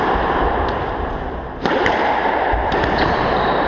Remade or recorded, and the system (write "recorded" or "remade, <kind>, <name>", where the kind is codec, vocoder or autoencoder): recorded